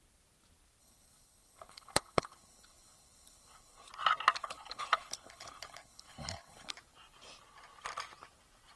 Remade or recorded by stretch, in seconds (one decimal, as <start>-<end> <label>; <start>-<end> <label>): 0.0-0.8 recorded; 0.8-3.9 remade; 3.9-4.4 recorded; 4.4-6.7 remade; 6.7-8.8 recorded